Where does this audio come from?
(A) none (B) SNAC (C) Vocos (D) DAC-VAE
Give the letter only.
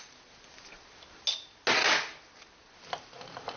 A